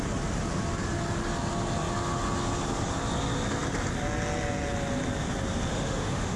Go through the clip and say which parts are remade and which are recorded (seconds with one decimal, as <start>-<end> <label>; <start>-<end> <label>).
0.0-5.7 recorded; 5.7-6.4 remade